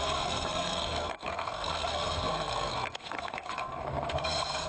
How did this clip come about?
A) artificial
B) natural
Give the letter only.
A